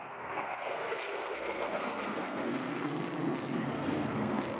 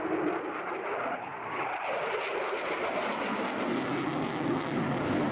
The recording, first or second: second